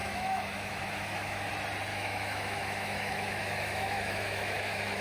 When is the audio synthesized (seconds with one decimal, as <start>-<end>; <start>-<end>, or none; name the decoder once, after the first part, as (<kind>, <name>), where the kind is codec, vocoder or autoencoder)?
0.0-1.5 (autoencoder, DAC-VAE); 1.9-5.0